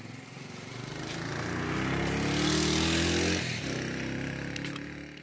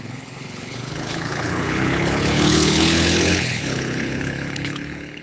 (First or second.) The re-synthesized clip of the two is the second